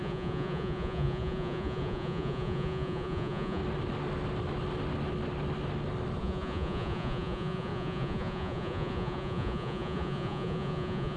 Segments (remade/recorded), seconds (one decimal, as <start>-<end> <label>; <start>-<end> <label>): 0.0-3.6 remade; 3.6-6.2 recorded; 6.2-11.2 remade